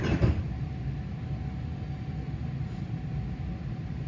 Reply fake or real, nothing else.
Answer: real